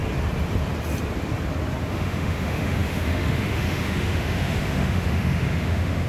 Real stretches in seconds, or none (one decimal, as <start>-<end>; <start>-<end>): 0.0-1.9